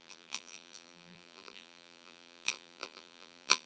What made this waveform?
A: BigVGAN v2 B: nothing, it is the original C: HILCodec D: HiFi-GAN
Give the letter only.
A